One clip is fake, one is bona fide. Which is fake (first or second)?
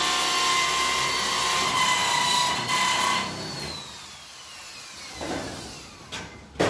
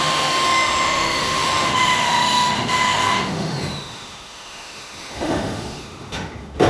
second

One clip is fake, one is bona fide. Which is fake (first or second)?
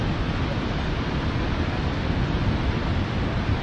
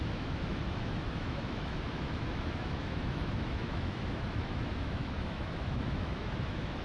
second